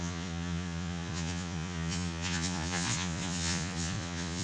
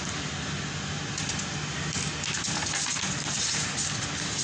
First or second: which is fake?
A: first